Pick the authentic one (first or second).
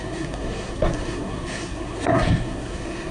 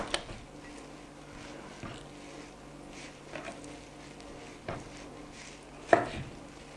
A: second